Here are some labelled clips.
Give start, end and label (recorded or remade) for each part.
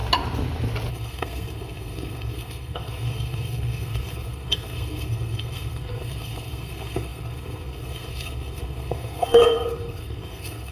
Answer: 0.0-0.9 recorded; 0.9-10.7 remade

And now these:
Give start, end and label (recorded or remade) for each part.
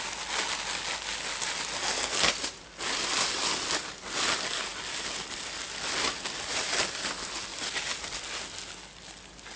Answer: 0.0-1.8 recorded; 1.8-2.3 remade; 2.3-9.6 recorded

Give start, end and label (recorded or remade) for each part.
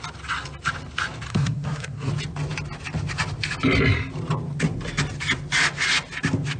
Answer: 0.0-1.3 recorded; 1.3-2.1 remade; 2.1-6.6 recorded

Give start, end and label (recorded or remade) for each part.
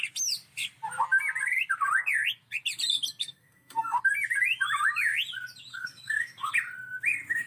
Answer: 0.0-3.2 recorded; 3.2-4.0 remade; 4.0-5.7 recorded; 5.7-6.5 remade; 6.5-7.5 recorded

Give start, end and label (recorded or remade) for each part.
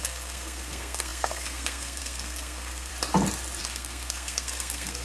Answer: 0.0-2.9 remade; 2.9-3.6 recorded; 3.6-5.0 remade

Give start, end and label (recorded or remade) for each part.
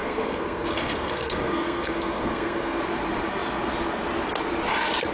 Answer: 0.0-2.8 remade; 2.8-5.1 recorded